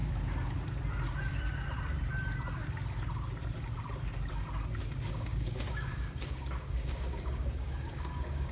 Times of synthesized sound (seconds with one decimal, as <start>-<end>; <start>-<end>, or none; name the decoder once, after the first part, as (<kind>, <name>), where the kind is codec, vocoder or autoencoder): 5.1-8.5 (codec, DAC)